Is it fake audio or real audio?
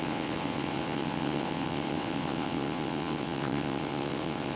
fake